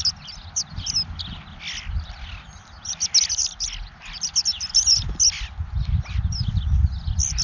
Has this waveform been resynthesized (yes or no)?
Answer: no